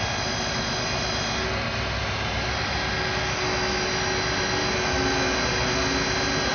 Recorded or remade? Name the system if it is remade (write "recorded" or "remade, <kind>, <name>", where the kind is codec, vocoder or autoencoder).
recorded